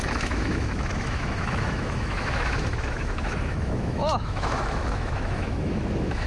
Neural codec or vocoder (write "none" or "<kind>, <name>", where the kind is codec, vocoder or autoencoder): autoencoder, DAC-VAE